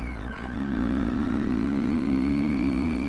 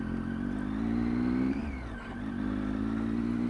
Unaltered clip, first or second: second